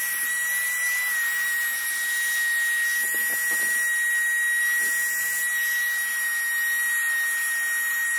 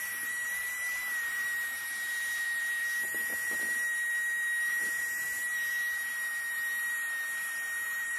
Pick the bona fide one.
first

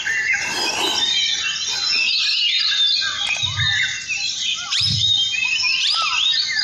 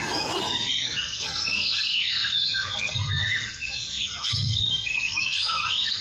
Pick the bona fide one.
first